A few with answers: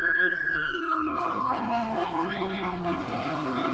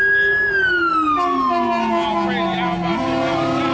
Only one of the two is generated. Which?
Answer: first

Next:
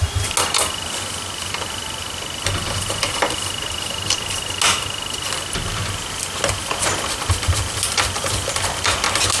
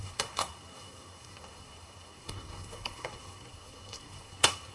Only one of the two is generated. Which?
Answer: second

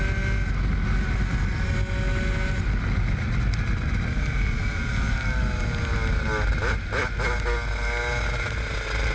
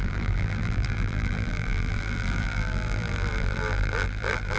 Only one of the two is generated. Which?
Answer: second